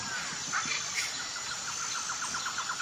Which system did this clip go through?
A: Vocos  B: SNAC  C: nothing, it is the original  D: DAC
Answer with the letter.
C